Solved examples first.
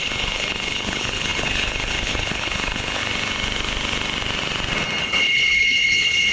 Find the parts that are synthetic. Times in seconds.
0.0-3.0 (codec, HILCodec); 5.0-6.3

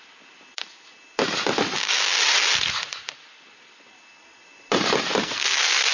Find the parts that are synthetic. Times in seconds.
5.2-5.9 (codec, SNAC)

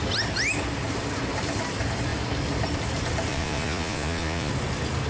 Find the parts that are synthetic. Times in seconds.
3.3-4.5 (vocoder, Vocos)

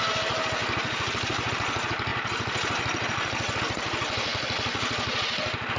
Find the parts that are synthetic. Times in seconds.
0.6-1.5 (vocoder, BigVGAN v2); 2.1-3.6; 4.3-5.2

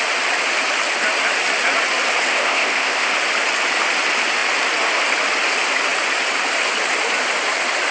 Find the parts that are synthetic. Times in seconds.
2.3-3.1 (codec, ZipCodec)